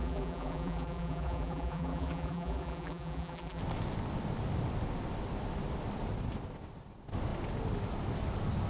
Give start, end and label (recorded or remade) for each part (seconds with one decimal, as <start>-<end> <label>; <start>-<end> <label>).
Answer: 0.0-3.6 remade; 3.6-8.7 recorded